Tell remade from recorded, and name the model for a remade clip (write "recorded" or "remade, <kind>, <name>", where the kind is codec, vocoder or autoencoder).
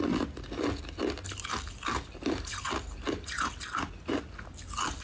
recorded